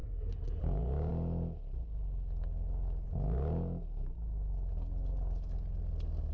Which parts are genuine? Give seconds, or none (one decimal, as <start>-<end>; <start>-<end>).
0.6-6.3